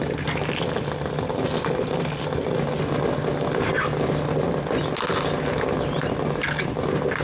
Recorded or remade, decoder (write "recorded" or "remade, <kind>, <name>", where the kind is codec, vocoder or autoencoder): recorded